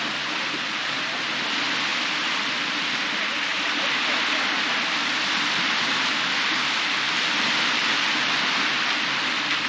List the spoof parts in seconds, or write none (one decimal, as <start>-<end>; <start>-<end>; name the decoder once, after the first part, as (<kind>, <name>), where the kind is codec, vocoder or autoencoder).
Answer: 1.9-3.1 (vocoder, BigVGAN v2); 3.5-8.1